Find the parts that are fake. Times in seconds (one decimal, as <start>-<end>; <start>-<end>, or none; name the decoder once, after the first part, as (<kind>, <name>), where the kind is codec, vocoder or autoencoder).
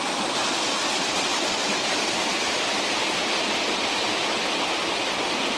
none